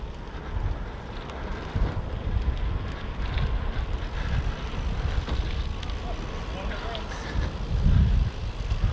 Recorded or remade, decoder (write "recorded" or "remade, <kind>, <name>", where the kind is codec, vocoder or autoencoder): recorded